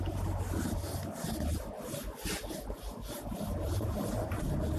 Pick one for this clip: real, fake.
real